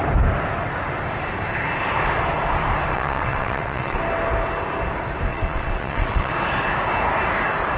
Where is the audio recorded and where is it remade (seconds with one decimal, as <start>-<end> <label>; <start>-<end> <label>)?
0.0-2.9 recorded; 2.9-4.0 remade; 4.0-5.3 recorded; 5.3-6.3 remade; 6.3-7.8 recorded